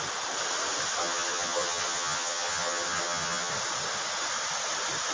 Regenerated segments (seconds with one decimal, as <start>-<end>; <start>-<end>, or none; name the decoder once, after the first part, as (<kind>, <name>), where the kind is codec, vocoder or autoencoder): 1.0-3.5 (vocoder, HiFi-GAN)